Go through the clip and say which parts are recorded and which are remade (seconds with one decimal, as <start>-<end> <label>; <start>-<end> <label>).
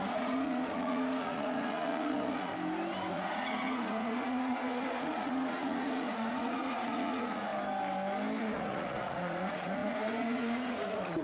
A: 0.0-2.5 remade; 2.5-3.1 recorded; 3.1-7.5 remade; 7.5-8.4 recorded; 8.4-11.2 remade